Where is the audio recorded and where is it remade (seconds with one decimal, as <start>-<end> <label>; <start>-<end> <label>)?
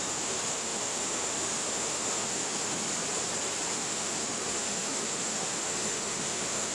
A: 0.0-2.8 remade; 2.8-3.7 recorded; 3.7-6.7 remade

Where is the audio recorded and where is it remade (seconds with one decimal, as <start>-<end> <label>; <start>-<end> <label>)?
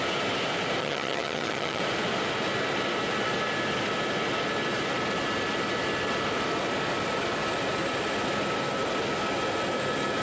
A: 0.0-0.8 recorded; 0.8-1.8 remade; 1.8-10.2 recorded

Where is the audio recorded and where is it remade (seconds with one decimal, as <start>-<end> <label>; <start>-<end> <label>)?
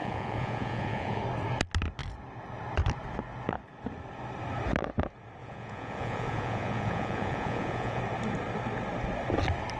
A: 0.0-1.2 remade; 1.2-5.4 recorded; 5.4-8.0 remade; 8.0-9.8 recorded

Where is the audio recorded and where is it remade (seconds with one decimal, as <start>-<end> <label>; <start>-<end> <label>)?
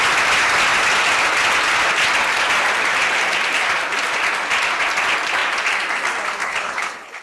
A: 0.0-6.4 recorded; 6.4-7.2 remade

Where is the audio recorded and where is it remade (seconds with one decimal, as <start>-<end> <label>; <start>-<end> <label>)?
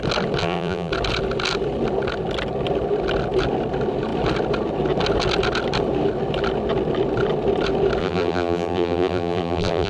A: 0.0-0.4 recorded; 0.4-0.9 remade; 0.9-8.0 recorded; 8.0-9.9 remade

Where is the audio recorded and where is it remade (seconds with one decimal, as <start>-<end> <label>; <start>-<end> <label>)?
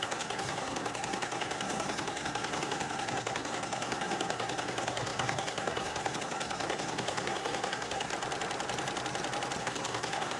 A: 0.0-8.1 remade; 8.1-9.6 recorded; 9.6-10.4 remade